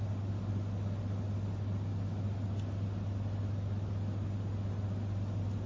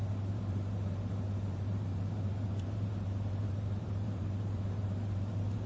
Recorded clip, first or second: first